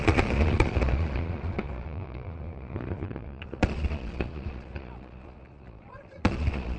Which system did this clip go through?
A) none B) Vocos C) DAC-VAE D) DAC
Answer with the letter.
B